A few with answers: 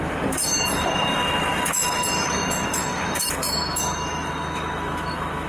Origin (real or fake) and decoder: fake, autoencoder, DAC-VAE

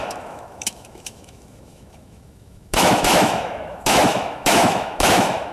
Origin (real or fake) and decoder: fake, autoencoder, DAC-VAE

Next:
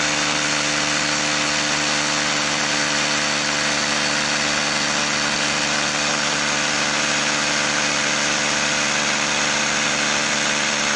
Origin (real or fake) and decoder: real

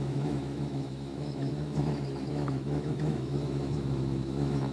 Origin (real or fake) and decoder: fake, autoencoder, DAC-VAE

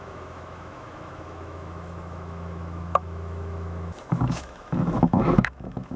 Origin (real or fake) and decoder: fake, autoencoder, DAC-VAE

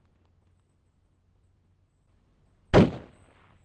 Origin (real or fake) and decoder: real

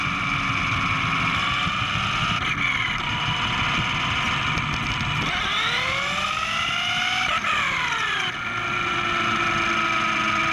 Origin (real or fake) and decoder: real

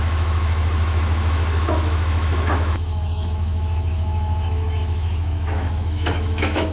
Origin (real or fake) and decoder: fake, autoencoder, DAC-VAE